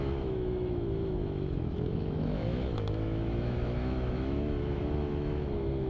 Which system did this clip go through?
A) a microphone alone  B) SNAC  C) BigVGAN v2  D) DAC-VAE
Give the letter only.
D